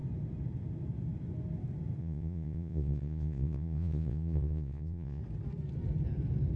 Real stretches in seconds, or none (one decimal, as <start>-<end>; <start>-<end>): 0.0-2.0; 5.2-6.6